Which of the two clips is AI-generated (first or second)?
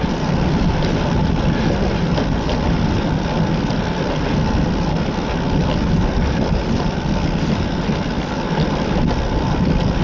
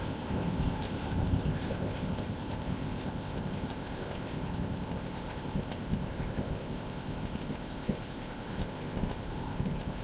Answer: second